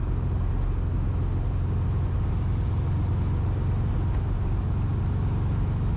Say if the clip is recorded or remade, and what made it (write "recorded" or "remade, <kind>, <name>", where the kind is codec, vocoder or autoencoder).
recorded